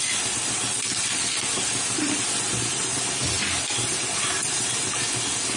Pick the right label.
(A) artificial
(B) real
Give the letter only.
B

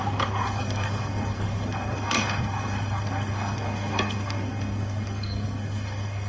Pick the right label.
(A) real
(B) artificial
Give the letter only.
B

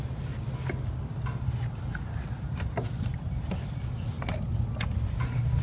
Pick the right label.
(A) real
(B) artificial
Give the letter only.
A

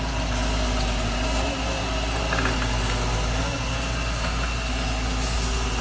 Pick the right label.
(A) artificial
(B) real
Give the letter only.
B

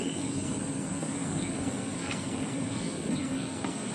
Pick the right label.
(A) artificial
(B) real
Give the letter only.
A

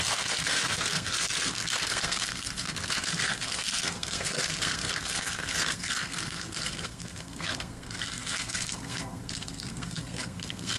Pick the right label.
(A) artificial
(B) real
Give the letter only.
A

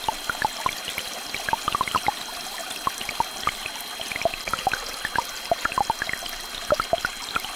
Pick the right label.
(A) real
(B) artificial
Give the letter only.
A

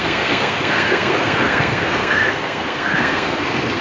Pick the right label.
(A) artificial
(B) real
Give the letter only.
A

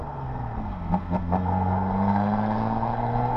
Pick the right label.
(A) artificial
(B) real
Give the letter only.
A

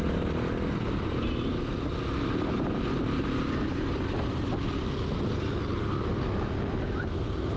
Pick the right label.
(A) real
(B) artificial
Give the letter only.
A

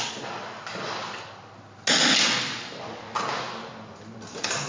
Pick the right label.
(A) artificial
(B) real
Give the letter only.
B